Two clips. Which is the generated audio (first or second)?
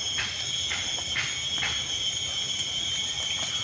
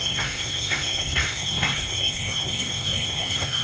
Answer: second